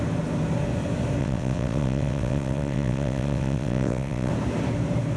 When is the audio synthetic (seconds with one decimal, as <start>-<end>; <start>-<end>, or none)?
1.2-4.3